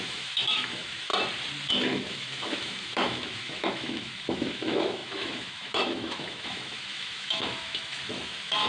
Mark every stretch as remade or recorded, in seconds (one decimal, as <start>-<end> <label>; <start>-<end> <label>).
0.0-1.1 remade; 1.1-1.7 recorded; 1.7-8.7 remade